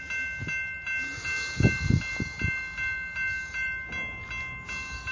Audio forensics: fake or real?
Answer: real